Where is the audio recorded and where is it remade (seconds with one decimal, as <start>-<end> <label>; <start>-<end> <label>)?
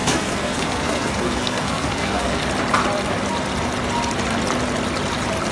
0.0-2.4 remade; 2.4-5.5 recorded